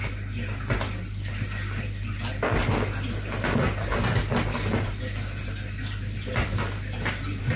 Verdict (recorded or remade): recorded